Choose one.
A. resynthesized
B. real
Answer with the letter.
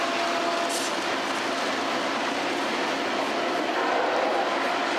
B